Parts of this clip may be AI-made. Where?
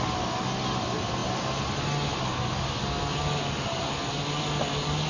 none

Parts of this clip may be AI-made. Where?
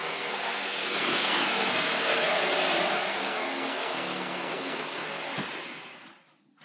0.0-2.5 (codec, SNAC); 3.0-5.2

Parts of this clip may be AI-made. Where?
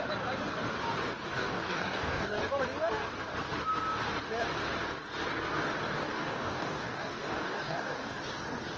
1.3-2.4 (codec, DAC); 6.0-8.2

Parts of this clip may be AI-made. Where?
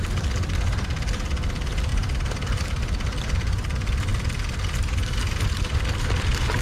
1.9-2.6 (vocoder, BigVGAN v2)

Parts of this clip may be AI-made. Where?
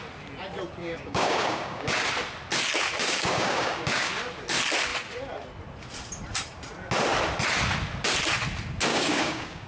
0.8-2.0 (codec, DAC); 3.0-4.1; 8.9-9.7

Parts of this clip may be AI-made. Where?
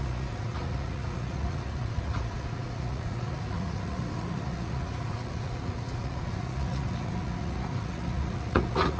0.0-9.0 (vocoder, Vocos)